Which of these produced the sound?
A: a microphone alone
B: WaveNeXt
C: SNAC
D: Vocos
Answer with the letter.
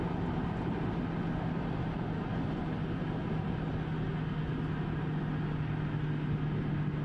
A